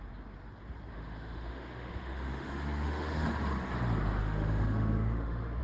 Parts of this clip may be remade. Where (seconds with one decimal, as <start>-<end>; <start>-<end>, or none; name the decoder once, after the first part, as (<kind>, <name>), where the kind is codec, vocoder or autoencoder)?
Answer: 0.9-3.3 (autoencoder, DAC-VAE); 4.2-5.6